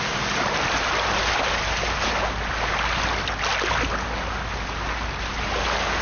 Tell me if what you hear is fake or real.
real